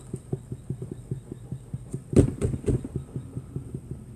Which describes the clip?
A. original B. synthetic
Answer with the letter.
A